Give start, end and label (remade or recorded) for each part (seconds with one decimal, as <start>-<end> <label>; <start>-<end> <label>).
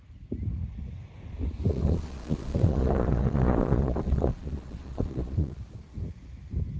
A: 0.0-1.7 recorded; 1.7-5.6 remade; 5.6-6.8 recorded